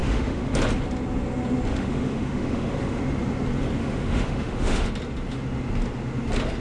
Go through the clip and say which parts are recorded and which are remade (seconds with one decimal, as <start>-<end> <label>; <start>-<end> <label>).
0.0-0.5 remade; 0.5-1.7 recorded; 1.7-3.0 remade; 3.0-3.8 recorded; 3.8-4.9 remade; 4.9-6.6 recorded

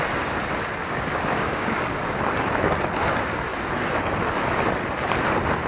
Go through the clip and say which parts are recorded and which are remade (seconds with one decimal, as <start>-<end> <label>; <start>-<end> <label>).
0.0-0.8 recorded; 0.8-2.2 remade; 2.2-5.7 recorded

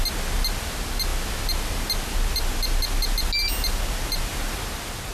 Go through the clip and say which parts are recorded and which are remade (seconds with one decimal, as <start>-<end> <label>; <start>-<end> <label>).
0.0-5.1 recorded

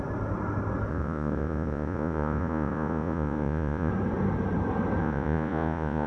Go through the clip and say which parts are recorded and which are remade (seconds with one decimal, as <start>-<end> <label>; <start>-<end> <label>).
0.0-0.9 recorded; 0.9-3.9 remade; 3.9-5.0 recorded; 5.0-6.1 remade

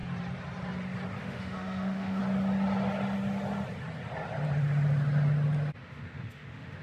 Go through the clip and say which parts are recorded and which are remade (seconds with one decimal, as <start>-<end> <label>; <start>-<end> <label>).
0.0-1.2 recorded; 1.2-2.2 remade; 2.2-5.8 recorded; 5.8-6.8 remade